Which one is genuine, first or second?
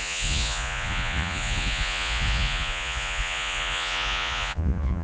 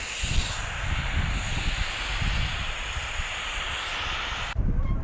second